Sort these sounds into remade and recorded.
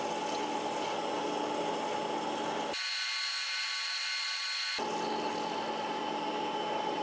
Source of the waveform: recorded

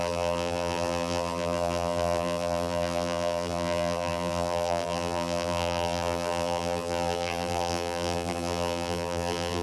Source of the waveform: remade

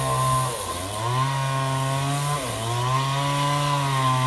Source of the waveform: recorded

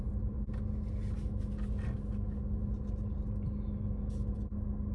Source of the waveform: recorded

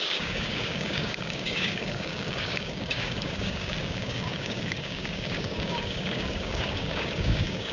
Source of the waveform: remade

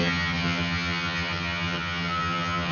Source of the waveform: remade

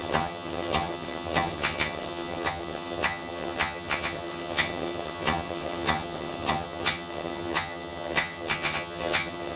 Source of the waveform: remade